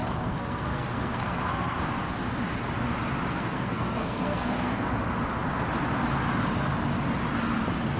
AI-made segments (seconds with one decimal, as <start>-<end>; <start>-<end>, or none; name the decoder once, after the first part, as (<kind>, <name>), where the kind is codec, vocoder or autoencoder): 0.0-1.8 (codec, SNAC); 3.3-4.9